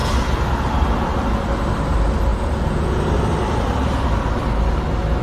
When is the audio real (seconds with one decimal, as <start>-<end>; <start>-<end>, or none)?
0.0-2.3; 3.0-5.2